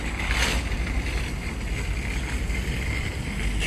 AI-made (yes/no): no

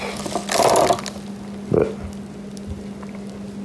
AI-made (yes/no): no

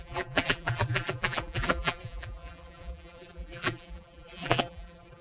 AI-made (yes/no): yes